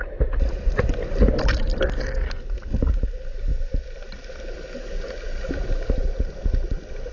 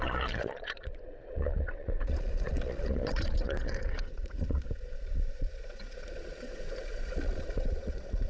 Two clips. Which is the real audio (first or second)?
first